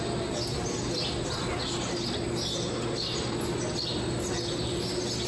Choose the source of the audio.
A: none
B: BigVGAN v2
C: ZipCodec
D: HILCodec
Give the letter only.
A